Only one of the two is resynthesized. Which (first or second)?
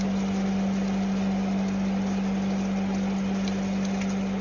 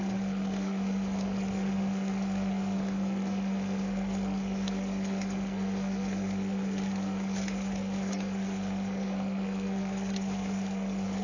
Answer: second